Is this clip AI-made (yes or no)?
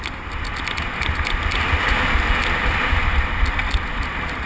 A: no